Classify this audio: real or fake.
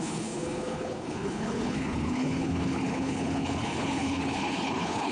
fake